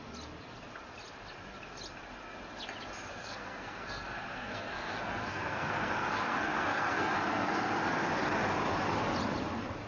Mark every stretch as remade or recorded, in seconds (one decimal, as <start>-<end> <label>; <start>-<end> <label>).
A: 0.0-3.1 recorded; 3.1-7.8 remade; 7.8-9.9 recorded